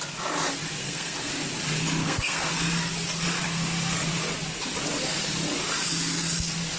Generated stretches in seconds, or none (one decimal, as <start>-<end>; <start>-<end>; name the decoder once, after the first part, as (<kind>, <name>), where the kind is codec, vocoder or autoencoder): 0.8-1.3 (codec, SNAC); 2.0-2.5